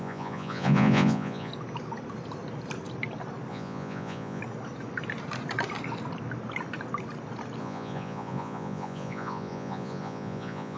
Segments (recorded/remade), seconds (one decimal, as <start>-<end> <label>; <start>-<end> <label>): 0.0-1.5 remade; 1.5-3.5 recorded; 3.5-4.4 remade; 4.4-7.6 recorded; 7.6-10.8 remade